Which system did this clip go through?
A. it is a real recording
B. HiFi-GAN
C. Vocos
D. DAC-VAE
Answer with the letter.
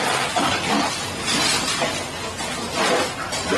A